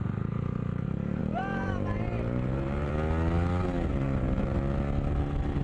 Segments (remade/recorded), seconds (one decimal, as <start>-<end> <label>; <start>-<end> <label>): 0.0-1.2 recorded; 1.2-2.9 remade; 2.9-3.9 recorded; 3.9-4.6 remade; 4.6-5.6 recorded